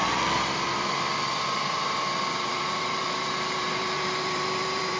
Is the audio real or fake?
fake